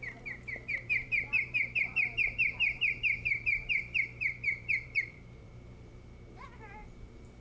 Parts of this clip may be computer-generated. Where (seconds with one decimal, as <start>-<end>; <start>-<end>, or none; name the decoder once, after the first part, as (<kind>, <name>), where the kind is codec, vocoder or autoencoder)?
0.0-7.4 (vocoder, BigVGAN v2)